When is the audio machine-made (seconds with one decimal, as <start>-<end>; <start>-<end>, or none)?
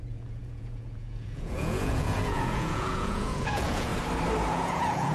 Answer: 0.0-3.9; 4.5-5.1